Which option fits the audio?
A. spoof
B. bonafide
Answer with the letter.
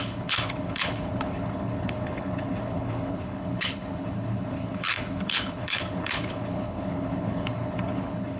A